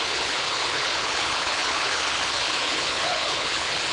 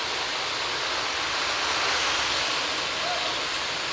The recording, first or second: second